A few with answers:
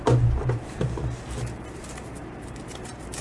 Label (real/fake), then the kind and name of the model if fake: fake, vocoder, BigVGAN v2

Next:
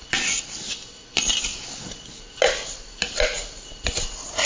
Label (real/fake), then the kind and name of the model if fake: real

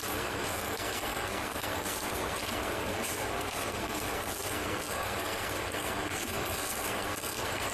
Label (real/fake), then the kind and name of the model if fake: fake, codec, SNAC